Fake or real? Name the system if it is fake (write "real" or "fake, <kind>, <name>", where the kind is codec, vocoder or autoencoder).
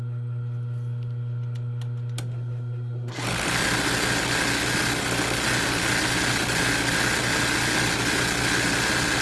real